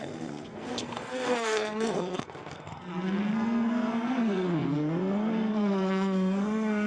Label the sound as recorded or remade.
remade